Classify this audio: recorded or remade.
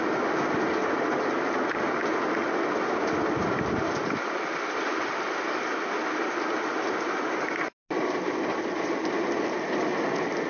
recorded